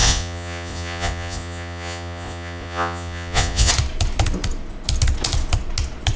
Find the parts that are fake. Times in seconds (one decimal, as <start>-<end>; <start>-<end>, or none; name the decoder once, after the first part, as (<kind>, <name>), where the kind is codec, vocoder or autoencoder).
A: 0.0-3.7 (vocoder, Vocos)

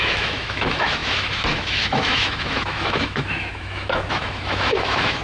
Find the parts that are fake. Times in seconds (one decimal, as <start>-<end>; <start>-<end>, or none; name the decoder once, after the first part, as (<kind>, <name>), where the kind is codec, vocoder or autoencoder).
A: 0.0-5.2 (autoencoder, DAC-VAE)

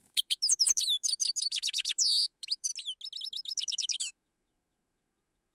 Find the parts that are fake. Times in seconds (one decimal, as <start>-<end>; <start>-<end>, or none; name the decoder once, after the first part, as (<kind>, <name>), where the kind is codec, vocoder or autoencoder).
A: 0.0-2.7 (autoencoder, DAC-VAE); 3.2-5.5

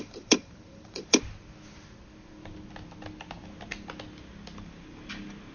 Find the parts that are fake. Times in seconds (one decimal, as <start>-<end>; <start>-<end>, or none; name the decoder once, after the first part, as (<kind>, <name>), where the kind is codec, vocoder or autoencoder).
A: 0.0-1.2 (vocoder, BigVGAN v2)

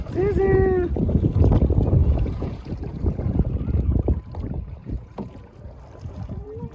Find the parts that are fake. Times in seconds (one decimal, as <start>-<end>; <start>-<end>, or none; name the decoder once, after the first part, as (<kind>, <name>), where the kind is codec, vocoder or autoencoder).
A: 2.0-3.5 (vocoder, Vocos); 4.8-5.8

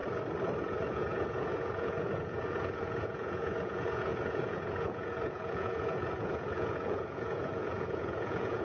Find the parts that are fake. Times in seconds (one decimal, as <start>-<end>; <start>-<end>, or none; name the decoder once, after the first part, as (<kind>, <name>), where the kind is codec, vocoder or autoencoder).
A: 0.6-8.6 (vocoder, Vocos)